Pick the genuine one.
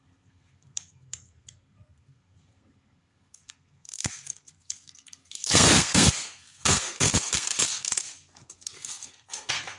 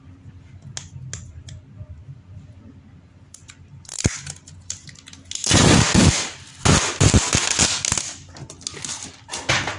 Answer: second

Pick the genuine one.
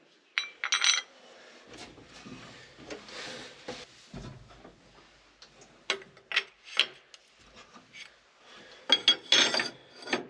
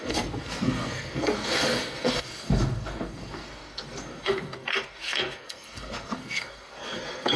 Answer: first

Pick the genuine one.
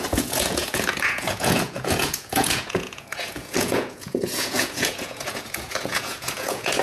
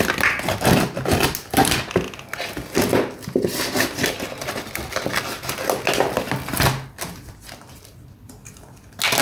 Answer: second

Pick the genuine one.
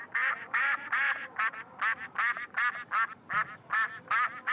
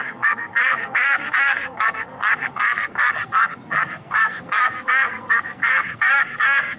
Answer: first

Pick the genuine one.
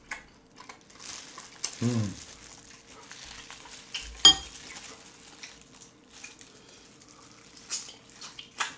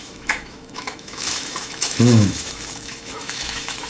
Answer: first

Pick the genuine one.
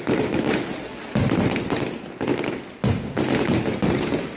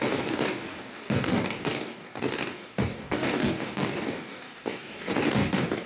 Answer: first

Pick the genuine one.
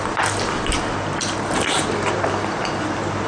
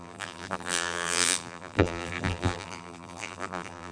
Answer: first